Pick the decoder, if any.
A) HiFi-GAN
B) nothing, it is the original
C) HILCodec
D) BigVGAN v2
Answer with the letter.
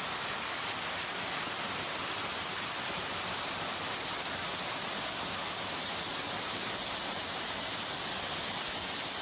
B